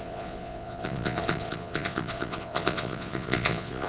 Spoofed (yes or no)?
yes